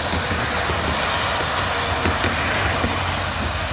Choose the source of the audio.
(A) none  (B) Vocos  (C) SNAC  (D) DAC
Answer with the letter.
A